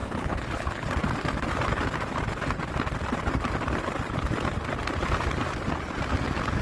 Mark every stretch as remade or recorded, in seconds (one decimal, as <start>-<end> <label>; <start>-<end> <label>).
0.0-0.9 remade; 0.9-6.6 recorded